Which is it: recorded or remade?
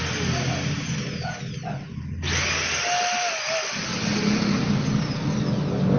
recorded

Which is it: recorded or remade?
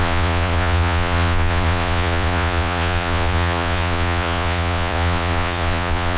remade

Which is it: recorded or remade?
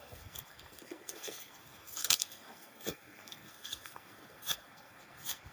remade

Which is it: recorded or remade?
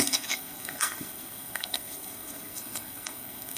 remade